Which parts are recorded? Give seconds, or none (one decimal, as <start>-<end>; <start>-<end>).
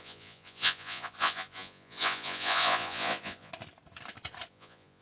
3.5-4.5